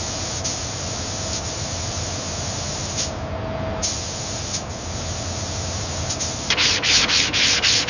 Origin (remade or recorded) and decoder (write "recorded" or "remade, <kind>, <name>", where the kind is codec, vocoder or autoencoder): recorded